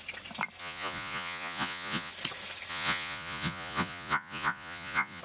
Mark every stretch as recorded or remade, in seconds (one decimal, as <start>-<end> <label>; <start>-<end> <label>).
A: 0.0-0.6 recorded; 0.6-2.1 remade; 2.1-2.7 recorded; 2.7-5.2 remade